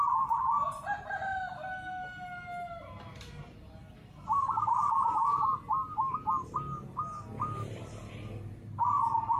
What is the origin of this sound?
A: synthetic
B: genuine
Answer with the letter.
B